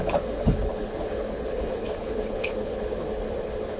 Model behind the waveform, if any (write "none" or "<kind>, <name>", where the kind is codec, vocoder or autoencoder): codec, HILCodec